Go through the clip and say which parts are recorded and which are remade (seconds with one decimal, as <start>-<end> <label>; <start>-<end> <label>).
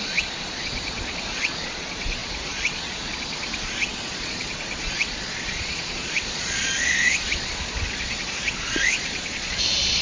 0.0-10.0 remade